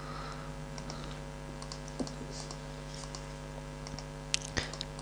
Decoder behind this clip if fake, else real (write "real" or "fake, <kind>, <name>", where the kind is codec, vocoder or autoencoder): real